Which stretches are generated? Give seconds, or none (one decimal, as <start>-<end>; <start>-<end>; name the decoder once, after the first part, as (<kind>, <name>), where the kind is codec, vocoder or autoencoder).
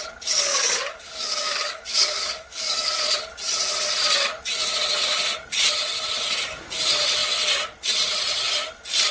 0.5-3.0 (codec, DAC)